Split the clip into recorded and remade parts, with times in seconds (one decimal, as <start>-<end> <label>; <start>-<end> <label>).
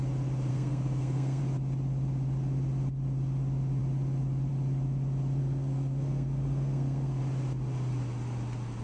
0.0-0.5 recorded; 0.5-1.4 remade; 1.4-5.4 recorded; 5.4-7.2 remade; 7.2-8.8 recorded